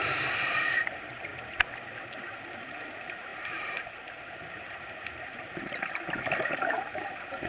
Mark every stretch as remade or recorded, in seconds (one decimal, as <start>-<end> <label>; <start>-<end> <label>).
0.0-0.6 recorded; 0.6-1.3 remade; 1.3-2.0 recorded; 2.0-7.5 remade